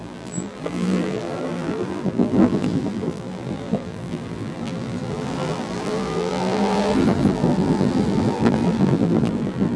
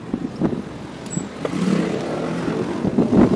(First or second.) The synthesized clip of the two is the first